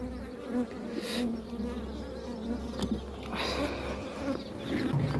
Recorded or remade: recorded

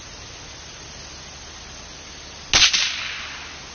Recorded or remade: recorded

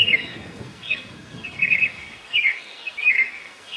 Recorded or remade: remade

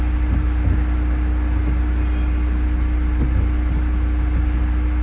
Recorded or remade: recorded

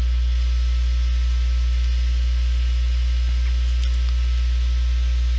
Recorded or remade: recorded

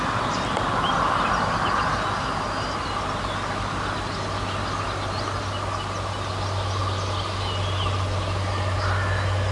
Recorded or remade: recorded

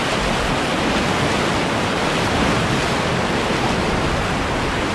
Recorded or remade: recorded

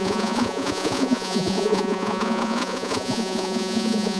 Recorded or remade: remade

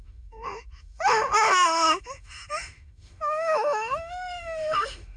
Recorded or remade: remade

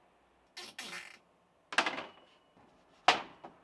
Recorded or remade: recorded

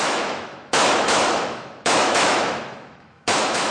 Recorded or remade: remade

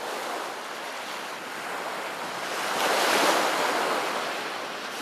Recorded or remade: recorded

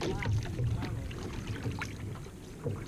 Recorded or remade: recorded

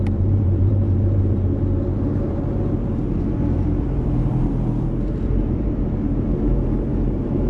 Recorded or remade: remade